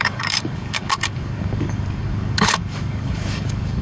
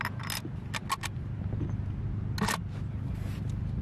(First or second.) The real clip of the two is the second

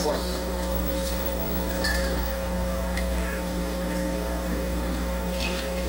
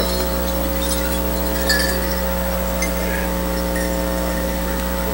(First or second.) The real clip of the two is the second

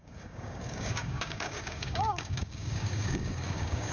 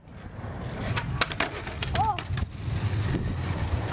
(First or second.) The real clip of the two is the second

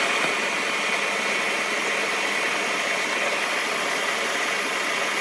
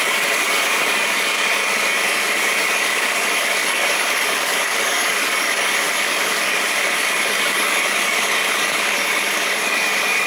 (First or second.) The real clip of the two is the first